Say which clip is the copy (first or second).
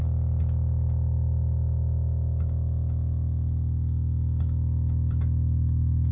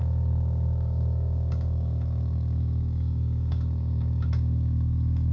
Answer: second